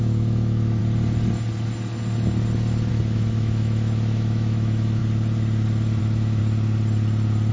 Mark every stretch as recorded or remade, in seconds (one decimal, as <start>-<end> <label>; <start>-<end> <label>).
0.0-0.8 remade; 0.8-2.9 recorded; 2.9-5.0 remade; 5.0-6.0 recorded; 6.0-6.4 remade; 6.4-7.5 recorded